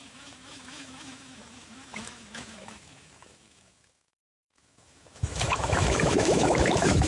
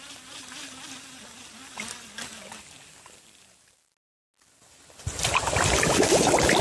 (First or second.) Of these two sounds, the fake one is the first